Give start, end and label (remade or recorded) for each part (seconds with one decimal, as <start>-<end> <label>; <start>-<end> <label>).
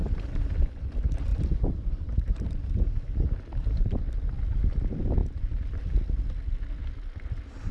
0.0-0.9 remade; 0.9-1.3 recorded; 1.3-4.0 remade; 4.0-5.2 recorded; 5.2-5.9 remade; 5.9-7.7 recorded